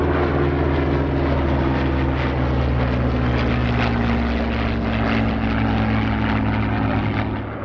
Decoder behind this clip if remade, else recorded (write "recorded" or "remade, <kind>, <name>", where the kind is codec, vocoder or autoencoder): recorded